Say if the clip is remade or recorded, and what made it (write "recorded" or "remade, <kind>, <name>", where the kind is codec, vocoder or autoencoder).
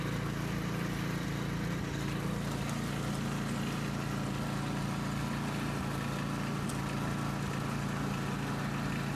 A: recorded